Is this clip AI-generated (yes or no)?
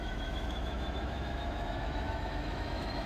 yes